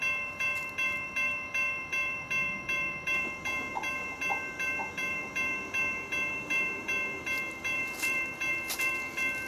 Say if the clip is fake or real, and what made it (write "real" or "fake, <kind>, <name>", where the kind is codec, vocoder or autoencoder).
fake, vocoder, BigVGAN v2